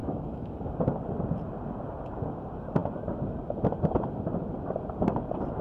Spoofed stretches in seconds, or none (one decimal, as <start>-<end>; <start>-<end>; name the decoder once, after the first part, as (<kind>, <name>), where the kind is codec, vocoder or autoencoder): 0.0-0.5 (autoencoder, DAC-VAE)